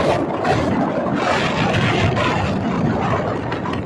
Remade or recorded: recorded